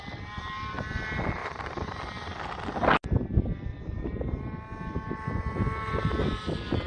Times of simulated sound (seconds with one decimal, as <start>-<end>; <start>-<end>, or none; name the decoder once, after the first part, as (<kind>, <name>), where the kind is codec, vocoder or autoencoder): 1.4-2.0 (vocoder, BigVGAN v2); 3.7-4.4